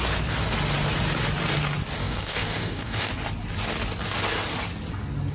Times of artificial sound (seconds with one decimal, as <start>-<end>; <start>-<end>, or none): 2.0-3.1